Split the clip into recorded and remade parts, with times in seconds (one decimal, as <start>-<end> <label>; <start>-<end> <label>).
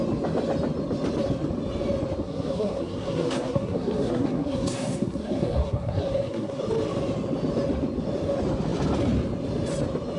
0.0-2.2 recorded; 2.2-6.6 remade; 6.6-10.2 recorded